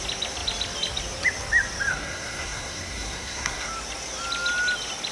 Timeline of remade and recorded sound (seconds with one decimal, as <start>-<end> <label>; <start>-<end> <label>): 0.0-1.9 recorded; 1.9-3.7 remade; 3.7-5.1 recorded

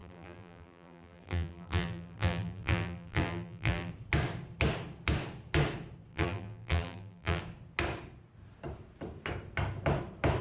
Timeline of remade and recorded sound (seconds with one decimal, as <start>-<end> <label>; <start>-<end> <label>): 0.0-3.9 remade; 3.9-6.1 recorded; 6.1-7.4 remade; 7.4-10.4 recorded

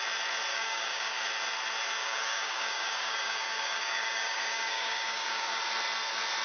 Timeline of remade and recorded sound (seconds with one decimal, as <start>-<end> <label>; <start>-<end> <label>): 0.0-0.5 recorded; 0.5-1.2 remade; 1.2-2.0 recorded; 2.0-5.6 remade; 5.6-6.4 recorded